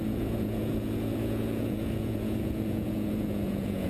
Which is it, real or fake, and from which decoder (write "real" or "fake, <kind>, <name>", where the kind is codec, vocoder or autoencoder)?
fake, vocoder, Vocos